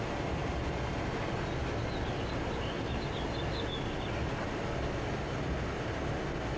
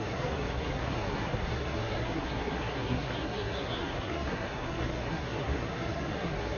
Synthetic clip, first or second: second